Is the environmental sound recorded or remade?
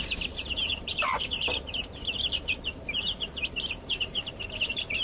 remade